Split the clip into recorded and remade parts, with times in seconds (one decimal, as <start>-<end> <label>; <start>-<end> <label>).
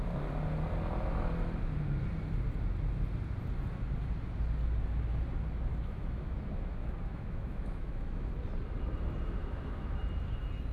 0.0-5.7 recorded; 5.7-8.3 remade; 8.3-9.4 recorded; 9.4-10.0 remade; 10.0-10.7 recorded